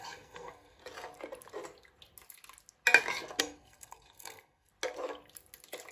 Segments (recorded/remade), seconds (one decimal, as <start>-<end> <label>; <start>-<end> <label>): 0.0-0.8 remade; 0.8-3.4 recorded; 3.4-4.7 remade; 4.7-5.9 recorded